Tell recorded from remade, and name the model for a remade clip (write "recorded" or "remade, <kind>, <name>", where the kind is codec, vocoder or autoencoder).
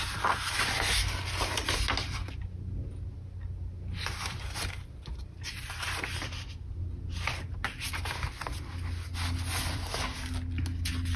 recorded